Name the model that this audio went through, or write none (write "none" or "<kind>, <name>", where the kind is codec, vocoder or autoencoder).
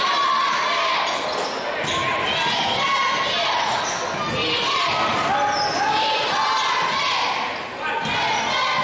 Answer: none